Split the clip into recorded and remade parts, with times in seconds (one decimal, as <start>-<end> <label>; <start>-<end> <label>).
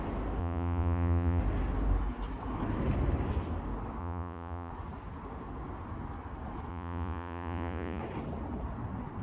0.0-0.4 recorded; 0.4-1.4 remade; 1.4-4.0 recorded; 4.0-4.7 remade; 4.7-6.7 recorded; 6.7-8.0 remade; 8.0-9.2 recorded